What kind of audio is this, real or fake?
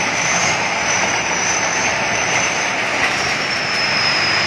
fake